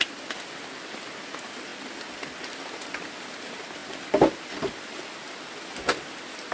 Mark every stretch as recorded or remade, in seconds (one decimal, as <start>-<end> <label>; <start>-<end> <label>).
0.0-6.5 recorded